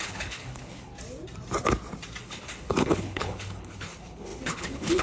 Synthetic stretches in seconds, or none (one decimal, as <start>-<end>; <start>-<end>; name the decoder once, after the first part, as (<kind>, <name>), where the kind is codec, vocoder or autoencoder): 0.0-0.9 (codec, HILCodec); 2.2-5.0